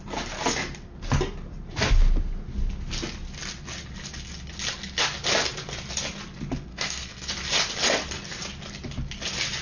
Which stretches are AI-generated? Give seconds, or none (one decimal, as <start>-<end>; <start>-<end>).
6.7-7.3